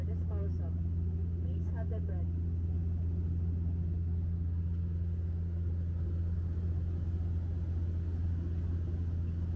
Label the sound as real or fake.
real